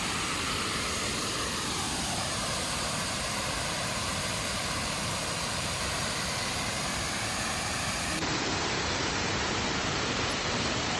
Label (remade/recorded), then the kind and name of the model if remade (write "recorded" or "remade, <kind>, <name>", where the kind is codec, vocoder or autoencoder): remade, vocoder, BigVGAN v2